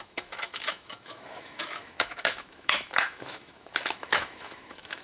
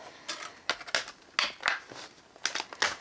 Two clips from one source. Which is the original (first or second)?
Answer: second